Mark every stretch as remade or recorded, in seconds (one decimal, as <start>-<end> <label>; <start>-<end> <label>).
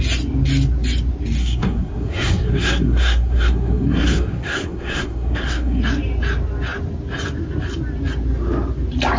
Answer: 0.0-1.4 recorded; 1.4-5.8 remade; 5.8-9.2 recorded